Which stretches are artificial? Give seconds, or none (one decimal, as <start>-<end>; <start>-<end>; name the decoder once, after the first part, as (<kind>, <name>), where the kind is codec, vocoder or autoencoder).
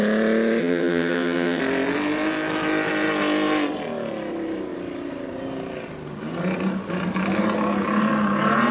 0.6-1.6 (vocoder, HiFi-GAN)